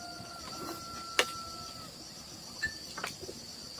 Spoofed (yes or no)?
no